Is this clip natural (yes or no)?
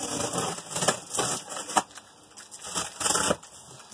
yes